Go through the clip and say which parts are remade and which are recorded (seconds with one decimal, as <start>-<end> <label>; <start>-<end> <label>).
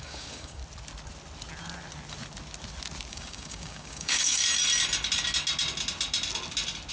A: 0.0-0.6 remade; 0.6-3.1 recorded; 3.1-4.4 remade; 4.4-6.9 recorded